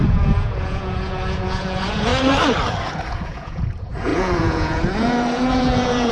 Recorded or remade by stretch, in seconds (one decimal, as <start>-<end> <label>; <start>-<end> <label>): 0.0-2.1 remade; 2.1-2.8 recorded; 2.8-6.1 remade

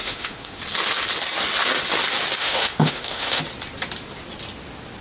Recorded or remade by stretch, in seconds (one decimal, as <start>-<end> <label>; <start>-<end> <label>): 0.0-0.6 remade; 0.6-2.4 recorded; 2.4-3.4 remade; 3.4-5.0 recorded

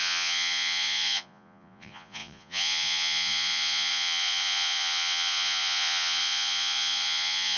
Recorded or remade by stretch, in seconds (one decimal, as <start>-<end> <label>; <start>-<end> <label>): 0.0-7.6 remade

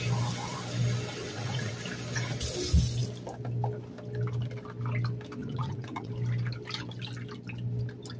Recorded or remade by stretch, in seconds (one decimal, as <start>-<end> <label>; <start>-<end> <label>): 0.0-1.2 recorded; 1.2-1.7 remade; 1.7-5.4 recorded; 5.4-6.1 remade; 6.1-8.2 recorded

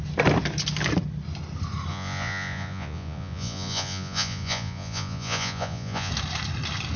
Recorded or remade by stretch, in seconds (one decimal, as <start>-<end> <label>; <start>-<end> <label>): 0.0-1.9 recorded; 1.9-6.1 remade; 6.1-7.0 recorded

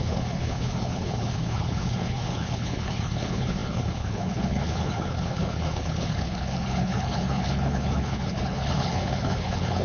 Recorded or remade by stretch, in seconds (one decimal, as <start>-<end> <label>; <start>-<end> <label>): 0.0-9.8 remade

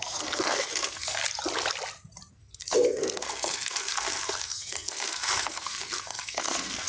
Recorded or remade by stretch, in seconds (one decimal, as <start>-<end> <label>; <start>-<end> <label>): 0.0-1.2 remade; 1.2-2.3 recorded; 2.3-6.9 remade